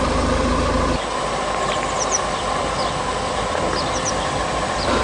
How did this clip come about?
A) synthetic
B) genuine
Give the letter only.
B